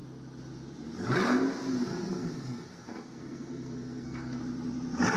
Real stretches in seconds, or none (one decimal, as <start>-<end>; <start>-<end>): 0.0-1.9; 4.4-5.2